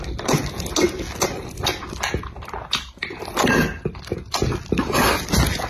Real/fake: real